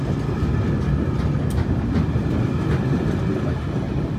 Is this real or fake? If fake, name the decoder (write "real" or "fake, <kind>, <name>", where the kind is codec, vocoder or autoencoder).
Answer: real